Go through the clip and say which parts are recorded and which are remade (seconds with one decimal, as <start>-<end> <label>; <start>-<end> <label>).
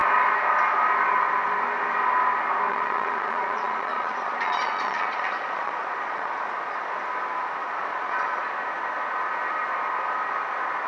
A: 0.0-2.7 recorded; 2.7-6.3 remade; 6.3-7.9 recorded; 7.9-8.5 remade; 8.5-10.9 recorded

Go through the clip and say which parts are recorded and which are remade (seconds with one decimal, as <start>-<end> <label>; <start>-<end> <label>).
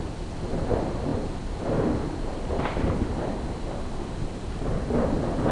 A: 0.0-5.5 recorded